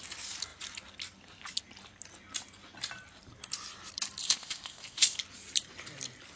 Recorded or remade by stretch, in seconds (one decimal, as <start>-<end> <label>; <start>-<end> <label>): 0.0-4.2 recorded; 4.2-5.2 remade; 5.2-6.4 recorded